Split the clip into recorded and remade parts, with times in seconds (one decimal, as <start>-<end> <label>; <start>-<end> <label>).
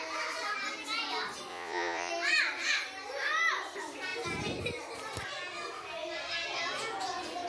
0.0-1.5 recorded; 1.5-2.1 remade; 2.1-7.5 recorded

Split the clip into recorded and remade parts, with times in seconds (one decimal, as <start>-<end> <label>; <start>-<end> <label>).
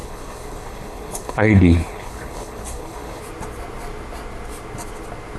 0.0-3.2 remade; 3.2-5.4 recorded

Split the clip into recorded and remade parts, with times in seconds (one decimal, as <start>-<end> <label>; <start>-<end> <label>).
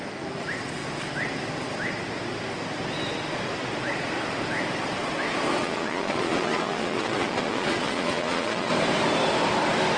0.0-5.6 recorded; 5.6-8.7 remade; 8.7-10.0 recorded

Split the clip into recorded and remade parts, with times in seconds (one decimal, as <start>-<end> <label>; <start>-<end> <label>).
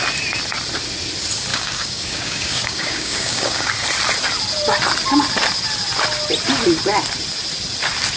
0.0-1.5 recorded; 1.5-3.7 remade; 3.7-8.2 recorded